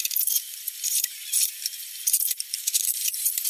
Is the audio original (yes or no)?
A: no